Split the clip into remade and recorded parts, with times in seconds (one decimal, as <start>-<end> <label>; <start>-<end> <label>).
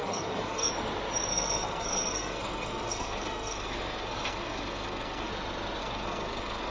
0.0-0.7 remade; 0.7-1.3 recorded; 1.3-5.3 remade; 5.3-5.8 recorded; 5.8-6.7 remade